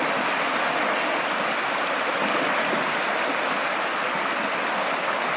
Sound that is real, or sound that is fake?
real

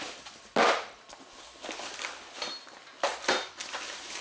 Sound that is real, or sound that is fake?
real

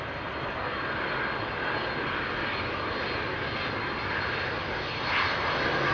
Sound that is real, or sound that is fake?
real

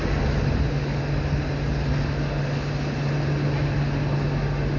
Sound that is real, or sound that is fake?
real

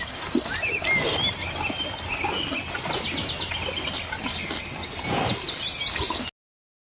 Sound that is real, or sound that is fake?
real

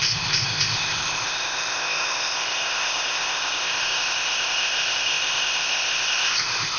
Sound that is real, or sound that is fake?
fake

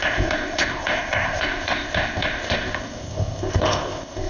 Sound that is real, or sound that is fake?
fake